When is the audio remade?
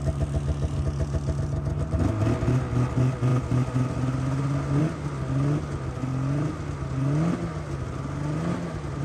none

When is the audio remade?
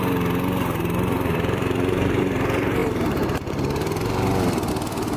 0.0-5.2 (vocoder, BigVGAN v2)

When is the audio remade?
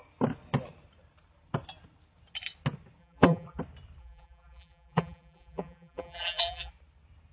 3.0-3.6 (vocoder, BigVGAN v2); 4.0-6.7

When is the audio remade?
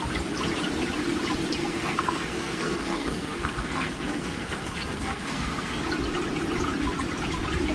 1.6-5.8 (codec, SNAC)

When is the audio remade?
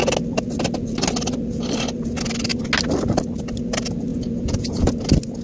4.1-4.9 (vocoder, Vocos)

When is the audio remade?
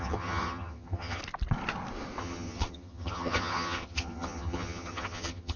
0.0-1.2 (vocoder, HiFi-GAN); 2.2-5.6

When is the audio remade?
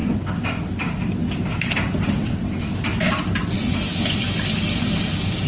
none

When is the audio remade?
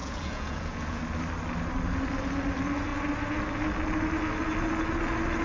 0.0-1.0 (vocoder, Vocos)